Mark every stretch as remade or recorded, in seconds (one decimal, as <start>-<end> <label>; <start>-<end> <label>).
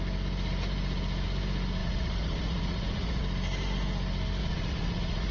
0.0-1.8 recorded; 1.8-3.2 remade; 3.2-4.4 recorded; 4.4-5.3 remade